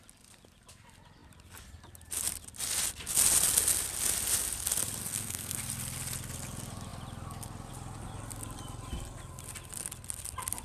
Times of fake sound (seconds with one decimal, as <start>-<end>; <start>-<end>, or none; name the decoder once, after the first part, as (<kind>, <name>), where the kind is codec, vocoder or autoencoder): 5.0-5.6 (codec, SNAC)